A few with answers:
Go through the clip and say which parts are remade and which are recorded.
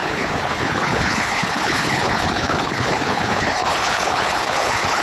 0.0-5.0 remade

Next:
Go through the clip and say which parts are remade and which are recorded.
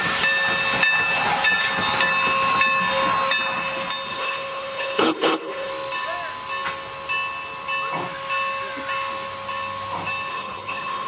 0.0-4.1 recorded; 4.1-5.7 remade; 5.7-10.3 recorded; 10.3-11.1 remade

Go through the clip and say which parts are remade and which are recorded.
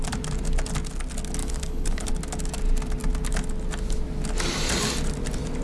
0.0-1.4 recorded; 1.4-2.1 remade; 2.1-5.6 recorded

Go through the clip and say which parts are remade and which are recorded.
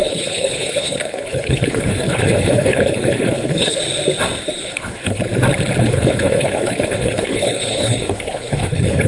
0.0-3.8 remade; 3.8-4.4 recorded; 4.4-5.2 remade; 5.2-5.8 recorded; 5.8-9.1 remade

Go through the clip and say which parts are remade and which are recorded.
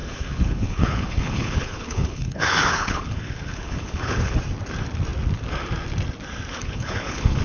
0.0-4.4 remade; 4.4-6.5 recorded; 6.5-7.4 remade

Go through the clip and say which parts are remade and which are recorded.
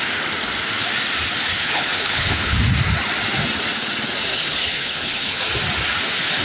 0.0-1.5 recorded; 1.5-2.6 remade; 2.6-4.3 recorded; 4.3-5.4 remade; 5.4-6.4 recorded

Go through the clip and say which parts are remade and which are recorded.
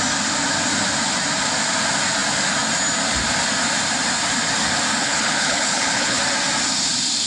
0.0-5.0 recorded; 5.0-6.2 remade; 6.2-7.3 recorded